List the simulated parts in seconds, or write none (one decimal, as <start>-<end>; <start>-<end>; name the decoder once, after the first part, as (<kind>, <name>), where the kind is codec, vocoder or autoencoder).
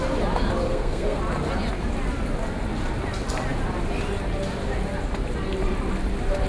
0.7-1.2 (codec, SNAC)